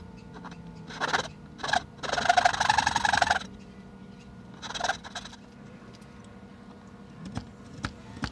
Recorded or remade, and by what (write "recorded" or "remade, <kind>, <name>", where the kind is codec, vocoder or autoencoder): recorded